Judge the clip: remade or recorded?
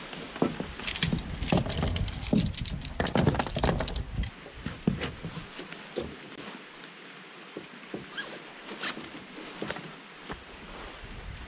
recorded